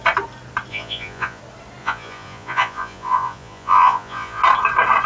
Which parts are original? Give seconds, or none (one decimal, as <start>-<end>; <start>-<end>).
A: 0.0-0.7; 1.4-1.8; 4.4-5.1

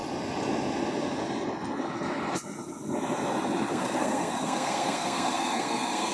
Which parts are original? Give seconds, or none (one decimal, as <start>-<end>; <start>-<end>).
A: 0.0-3.7

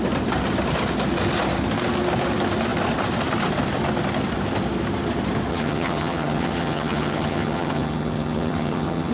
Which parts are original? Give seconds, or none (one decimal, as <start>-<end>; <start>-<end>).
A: 0.0-5.5

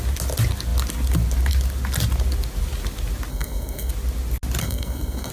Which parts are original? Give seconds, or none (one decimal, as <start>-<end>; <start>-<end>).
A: 0.0-3.3; 3.9-4.6

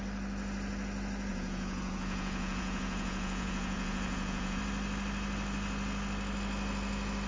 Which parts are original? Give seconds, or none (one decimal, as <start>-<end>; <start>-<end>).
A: 0.0-1.3; 4.6-7.3

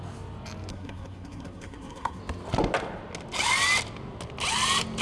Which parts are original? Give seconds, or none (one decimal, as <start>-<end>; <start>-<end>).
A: 0.0-0.7; 2.2-5.0

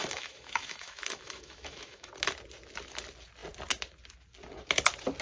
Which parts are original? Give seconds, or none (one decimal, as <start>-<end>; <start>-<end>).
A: 2.1-5.2

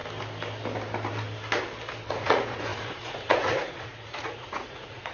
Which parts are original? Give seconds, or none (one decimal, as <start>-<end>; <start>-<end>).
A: 0.0-2.1